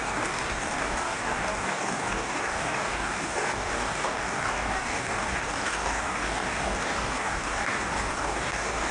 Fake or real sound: fake